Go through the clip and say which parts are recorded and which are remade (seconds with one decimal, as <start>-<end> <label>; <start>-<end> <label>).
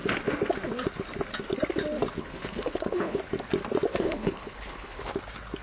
0.0-2.2 recorded; 2.2-3.2 remade; 3.2-3.9 recorded; 3.9-5.1 remade; 5.1-5.6 recorded